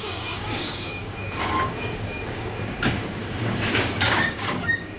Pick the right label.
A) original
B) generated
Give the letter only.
B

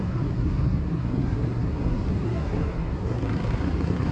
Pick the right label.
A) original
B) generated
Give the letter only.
B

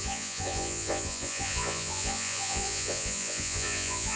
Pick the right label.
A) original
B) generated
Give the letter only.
B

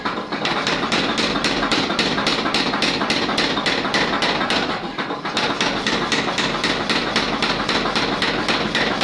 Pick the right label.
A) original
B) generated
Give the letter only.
B